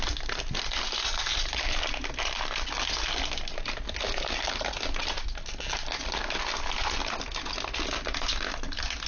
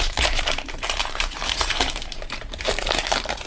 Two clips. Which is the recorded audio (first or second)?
first